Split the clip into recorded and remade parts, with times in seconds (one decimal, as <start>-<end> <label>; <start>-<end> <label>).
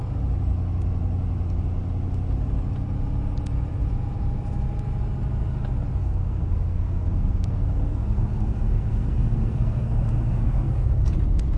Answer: 0.0-6.0 recorded; 6.0-11.1 remade; 11.1-11.6 recorded